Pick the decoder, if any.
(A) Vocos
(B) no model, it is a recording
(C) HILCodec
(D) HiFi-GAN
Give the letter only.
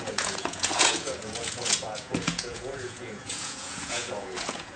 A